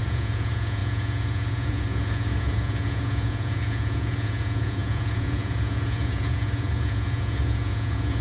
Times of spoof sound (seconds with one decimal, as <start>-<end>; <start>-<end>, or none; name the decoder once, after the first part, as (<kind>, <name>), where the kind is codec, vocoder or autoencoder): 0.0-8.2 (vocoder, Vocos)

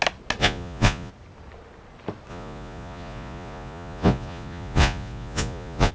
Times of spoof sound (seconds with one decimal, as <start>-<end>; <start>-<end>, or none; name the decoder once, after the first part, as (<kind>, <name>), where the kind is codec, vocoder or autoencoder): 0.4-1.1 (vocoder, Vocos); 2.3-5.9

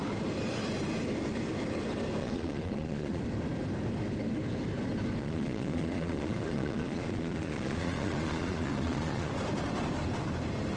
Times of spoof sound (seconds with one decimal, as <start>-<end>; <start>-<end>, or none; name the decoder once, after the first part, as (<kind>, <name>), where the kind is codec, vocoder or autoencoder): 2.2-3.2 (vocoder, Vocos); 5.2-9.3